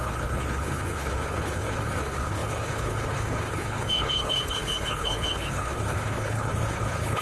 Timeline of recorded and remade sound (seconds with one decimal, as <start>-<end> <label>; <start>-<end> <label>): 0.0-7.2 remade